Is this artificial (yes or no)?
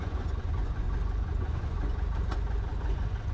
yes